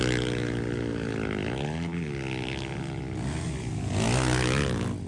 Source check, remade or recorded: recorded